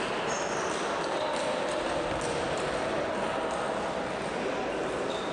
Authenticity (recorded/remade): recorded